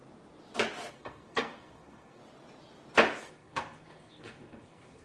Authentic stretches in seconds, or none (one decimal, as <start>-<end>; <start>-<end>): 0.0-0.9; 2.2-3.2